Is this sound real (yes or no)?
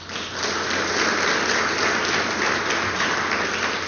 yes